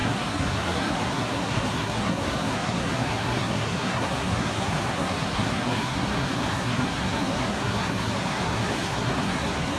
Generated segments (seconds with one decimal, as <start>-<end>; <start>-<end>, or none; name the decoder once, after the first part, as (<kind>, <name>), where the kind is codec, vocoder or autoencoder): 0.0-9.8 (codec, SNAC)